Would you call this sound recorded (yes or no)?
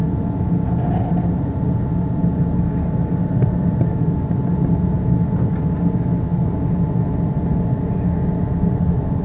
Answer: yes